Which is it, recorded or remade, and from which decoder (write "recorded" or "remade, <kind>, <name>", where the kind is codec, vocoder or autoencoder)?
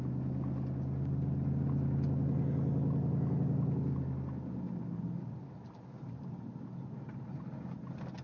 recorded